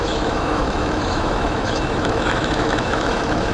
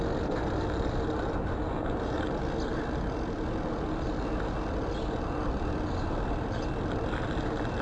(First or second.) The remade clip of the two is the first